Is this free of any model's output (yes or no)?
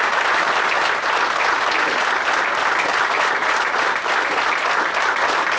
yes